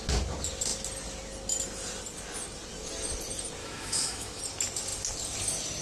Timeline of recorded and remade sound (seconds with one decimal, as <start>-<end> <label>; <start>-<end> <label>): 0.0-3.6 recorded; 3.6-4.4 remade; 4.4-5.8 recorded